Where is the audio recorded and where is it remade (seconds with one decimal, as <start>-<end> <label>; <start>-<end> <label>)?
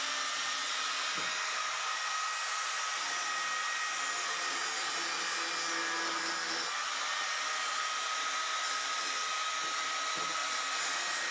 0.0-11.3 recorded